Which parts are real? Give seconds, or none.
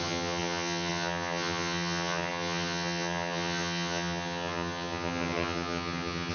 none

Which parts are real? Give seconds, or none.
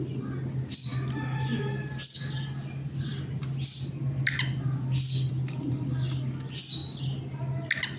0.0-8.0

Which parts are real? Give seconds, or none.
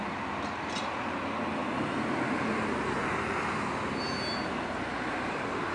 0.0-5.7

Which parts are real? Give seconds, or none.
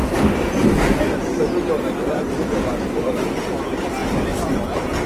0.0-4.0; 4.5-5.1